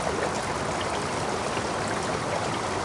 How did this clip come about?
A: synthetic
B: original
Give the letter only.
B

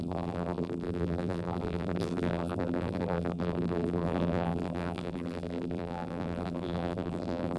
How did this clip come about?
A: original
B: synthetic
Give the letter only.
B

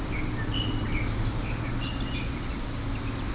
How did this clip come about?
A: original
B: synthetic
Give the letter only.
A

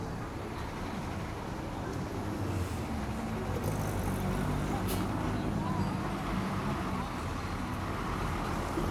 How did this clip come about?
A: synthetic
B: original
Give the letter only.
B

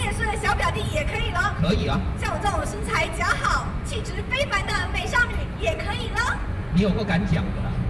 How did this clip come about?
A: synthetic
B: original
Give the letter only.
A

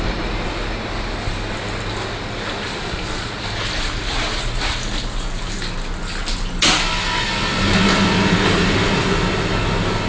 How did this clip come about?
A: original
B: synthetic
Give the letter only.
A